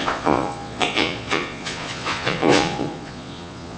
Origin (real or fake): fake